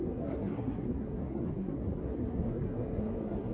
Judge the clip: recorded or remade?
remade